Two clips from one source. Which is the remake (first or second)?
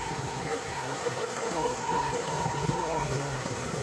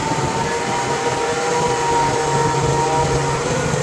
first